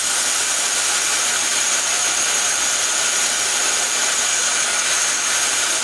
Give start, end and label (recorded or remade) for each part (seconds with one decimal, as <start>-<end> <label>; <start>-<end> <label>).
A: 0.0-4.3 recorded; 4.3-4.9 remade; 4.9-5.8 recorded